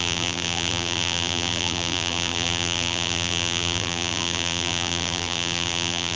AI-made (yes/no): yes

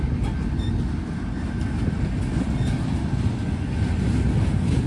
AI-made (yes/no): no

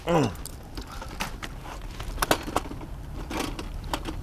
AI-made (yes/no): no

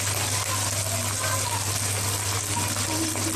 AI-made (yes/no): no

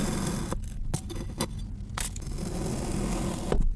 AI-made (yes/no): no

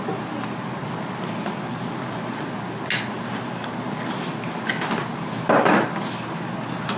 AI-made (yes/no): no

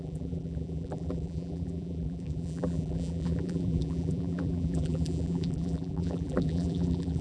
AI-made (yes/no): yes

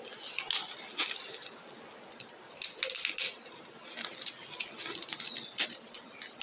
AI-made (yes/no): no